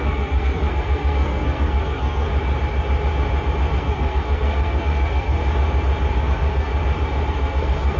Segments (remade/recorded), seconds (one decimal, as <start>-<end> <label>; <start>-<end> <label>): 0.0-2.3 remade; 2.3-3.7 recorded; 3.7-5.4 remade; 5.4-6.2 recorded; 6.2-6.7 remade; 6.7-7.3 recorded; 7.3-8.0 remade